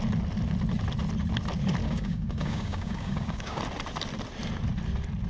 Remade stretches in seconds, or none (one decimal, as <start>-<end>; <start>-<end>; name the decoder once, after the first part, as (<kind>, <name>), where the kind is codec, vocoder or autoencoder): 1.8-3.6 (codec, DAC)